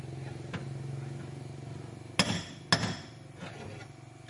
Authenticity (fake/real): real